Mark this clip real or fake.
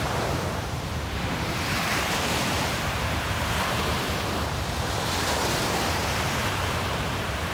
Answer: fake